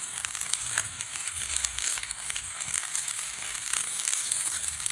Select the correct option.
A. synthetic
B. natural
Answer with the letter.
A